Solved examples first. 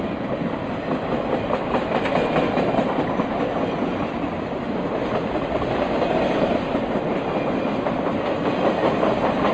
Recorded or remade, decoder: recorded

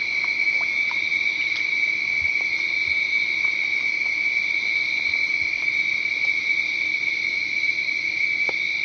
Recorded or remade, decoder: recorded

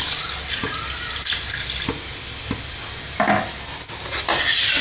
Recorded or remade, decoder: recorded